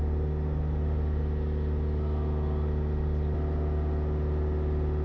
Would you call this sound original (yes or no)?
yes